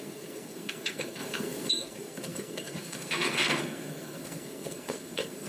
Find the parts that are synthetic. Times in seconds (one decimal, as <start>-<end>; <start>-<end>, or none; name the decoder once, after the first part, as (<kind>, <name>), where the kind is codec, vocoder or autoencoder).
0.0-5.5 (codec, SNAC)